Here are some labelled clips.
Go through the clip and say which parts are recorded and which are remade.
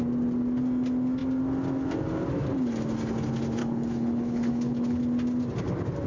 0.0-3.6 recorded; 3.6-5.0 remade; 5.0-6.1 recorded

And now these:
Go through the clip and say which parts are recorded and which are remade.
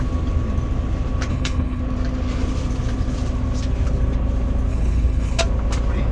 0.0-1.3 recorded; 1.3-1.8 remade; 1.8-4.7 recorded; 4.7-5.4 remade; 5.4-6.1 recorded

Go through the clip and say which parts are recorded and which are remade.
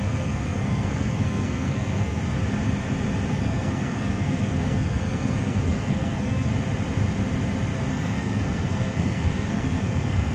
0.0-2.2 remade; 2.2-3.3 recorded; 3.3-6.5 remade; 6.5-7.9 recorded; 7.9-10.3 remade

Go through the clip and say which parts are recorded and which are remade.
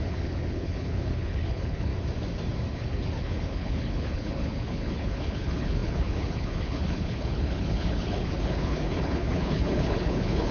0.0-1.9 remade; 1.9-2.7 recorded; 2.7-10.5 remade